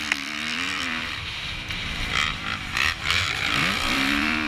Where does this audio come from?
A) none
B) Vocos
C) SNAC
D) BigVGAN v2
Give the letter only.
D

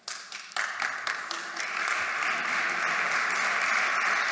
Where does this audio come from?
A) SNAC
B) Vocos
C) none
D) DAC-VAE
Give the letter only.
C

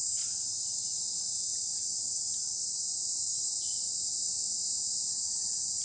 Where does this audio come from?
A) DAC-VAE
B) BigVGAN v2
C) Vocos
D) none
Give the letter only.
D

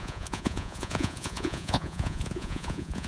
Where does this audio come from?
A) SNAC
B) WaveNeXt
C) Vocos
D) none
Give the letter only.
C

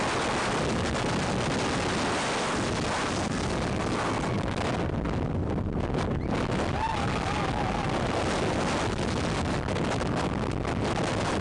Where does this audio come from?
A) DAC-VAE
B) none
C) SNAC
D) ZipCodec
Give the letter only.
B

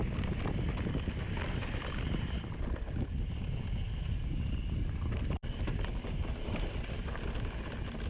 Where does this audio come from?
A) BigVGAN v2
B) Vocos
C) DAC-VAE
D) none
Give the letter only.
D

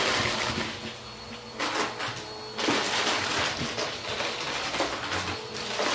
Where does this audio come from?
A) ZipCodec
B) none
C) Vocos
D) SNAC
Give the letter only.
B